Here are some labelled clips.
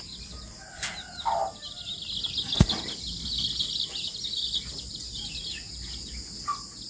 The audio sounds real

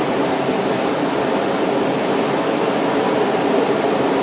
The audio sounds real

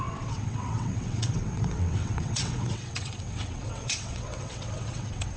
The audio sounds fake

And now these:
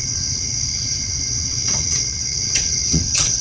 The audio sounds fake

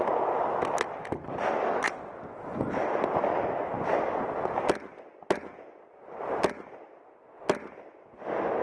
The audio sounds real